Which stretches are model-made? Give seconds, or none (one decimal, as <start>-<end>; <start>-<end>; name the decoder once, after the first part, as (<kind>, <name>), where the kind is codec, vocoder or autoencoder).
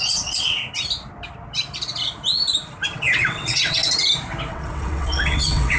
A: 0.0-0.6 (vocoder, WaveNeXt); 2.9-3.8; 4.5-5.8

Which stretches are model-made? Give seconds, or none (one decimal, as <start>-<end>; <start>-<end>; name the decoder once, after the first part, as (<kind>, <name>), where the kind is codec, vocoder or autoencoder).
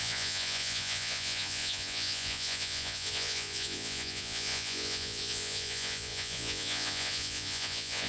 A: 0.0-8.1 (vocoder, Vocos)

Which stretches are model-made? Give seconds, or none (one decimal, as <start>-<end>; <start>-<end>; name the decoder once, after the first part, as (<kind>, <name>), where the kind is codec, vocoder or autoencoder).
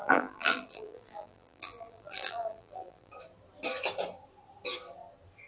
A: 0.0-3.1 (vocoder, BigVGAN v2)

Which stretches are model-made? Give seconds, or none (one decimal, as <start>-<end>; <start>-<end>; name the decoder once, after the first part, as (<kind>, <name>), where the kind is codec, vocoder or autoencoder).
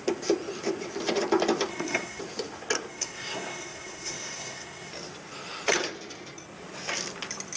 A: 1.7-2.2 (codec, SNAC); 2.9-4.9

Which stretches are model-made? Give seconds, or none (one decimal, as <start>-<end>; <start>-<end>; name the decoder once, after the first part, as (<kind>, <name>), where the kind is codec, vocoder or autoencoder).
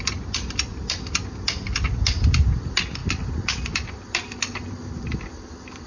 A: none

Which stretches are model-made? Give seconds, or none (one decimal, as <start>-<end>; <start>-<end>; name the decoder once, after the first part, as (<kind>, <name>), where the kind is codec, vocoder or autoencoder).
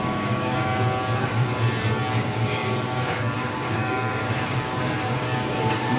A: 0.0-0.7 (codec, DAC); 2.2-6.0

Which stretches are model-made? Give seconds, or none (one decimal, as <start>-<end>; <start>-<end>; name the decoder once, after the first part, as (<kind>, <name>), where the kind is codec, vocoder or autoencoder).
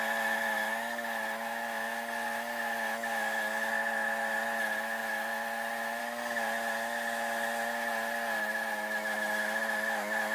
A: none